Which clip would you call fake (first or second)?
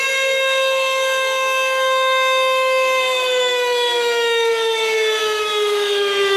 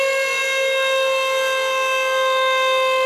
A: first